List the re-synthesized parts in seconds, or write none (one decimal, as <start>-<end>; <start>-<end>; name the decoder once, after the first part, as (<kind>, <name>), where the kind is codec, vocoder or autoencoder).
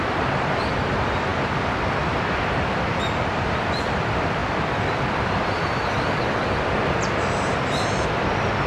0.0-8.7 (vocoder, BigVGAN v2)